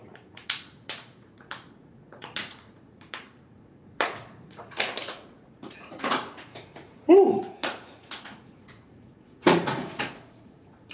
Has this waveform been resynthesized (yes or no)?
yes